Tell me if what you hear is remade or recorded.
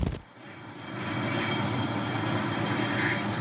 recorded